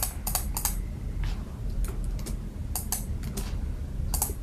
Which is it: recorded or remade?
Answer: recorded